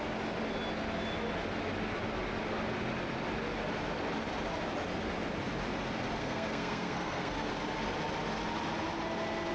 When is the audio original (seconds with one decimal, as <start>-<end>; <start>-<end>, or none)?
0.0-6.2; 7.5-9.5

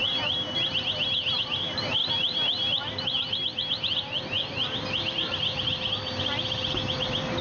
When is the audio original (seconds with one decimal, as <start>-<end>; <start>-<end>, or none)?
5.7-7.0

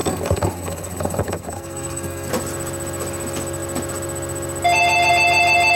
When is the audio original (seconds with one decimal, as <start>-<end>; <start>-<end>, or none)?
2.3-5.8

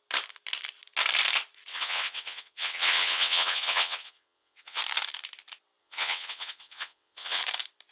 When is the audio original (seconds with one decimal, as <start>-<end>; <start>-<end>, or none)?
0.0-1.7; 4.8-5.8; 7.4-7.9